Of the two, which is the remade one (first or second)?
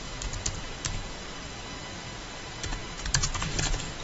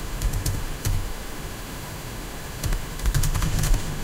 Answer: second